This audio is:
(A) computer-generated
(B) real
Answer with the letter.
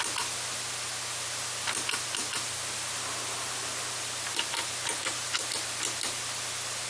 B